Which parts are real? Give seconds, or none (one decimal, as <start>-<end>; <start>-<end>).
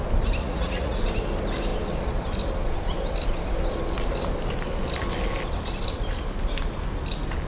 0.0-0.4; 1.0-7.5